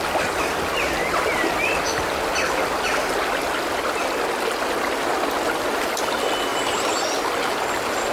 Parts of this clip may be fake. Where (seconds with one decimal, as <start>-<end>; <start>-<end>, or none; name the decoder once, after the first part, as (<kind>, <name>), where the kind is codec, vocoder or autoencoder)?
none